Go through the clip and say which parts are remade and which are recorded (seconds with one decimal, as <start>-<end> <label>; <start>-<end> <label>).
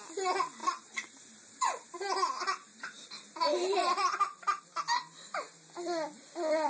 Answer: 0.0-0.6 recorded; 0.6-4.6 remade; 4.6-6.7 recorded